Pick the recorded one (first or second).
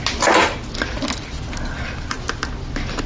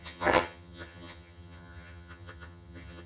first